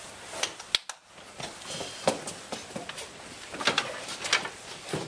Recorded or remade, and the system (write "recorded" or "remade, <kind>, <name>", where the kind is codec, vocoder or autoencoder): recorded